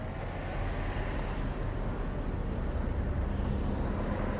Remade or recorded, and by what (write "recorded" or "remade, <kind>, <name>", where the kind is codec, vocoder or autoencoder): recorded